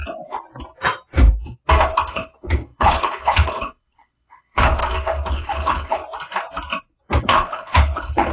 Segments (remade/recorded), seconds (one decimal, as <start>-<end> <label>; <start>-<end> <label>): 0.0-2.1 recorded; 2.1-4.8 remade; 4.8-5.3 recorded; 5.3-6.0 remade; 6.0-7.2 recorded; 7.2-8.3 remade